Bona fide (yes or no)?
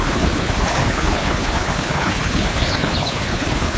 no